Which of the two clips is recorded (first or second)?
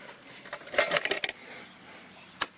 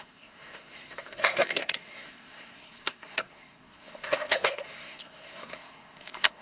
first